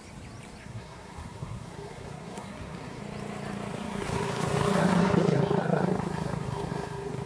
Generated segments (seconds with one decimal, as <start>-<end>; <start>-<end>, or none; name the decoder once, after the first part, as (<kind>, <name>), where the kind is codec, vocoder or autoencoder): 0.6-3.0 (codec, SNAC); 3.7-7.3